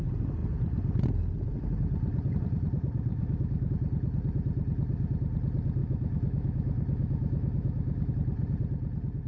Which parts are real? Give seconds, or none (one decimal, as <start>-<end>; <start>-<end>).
0.0-3.1; 3.7-5.8; 8.1-9.3